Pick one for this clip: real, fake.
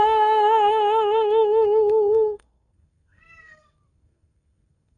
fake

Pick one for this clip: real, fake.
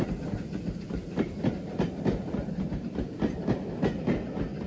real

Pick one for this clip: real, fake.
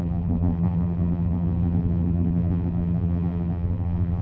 fake